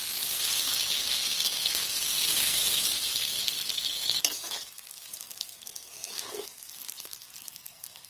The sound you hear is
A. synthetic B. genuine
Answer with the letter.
A